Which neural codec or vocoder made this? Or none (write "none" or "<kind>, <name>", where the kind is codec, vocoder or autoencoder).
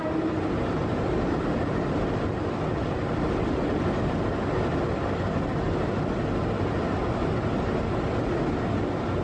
none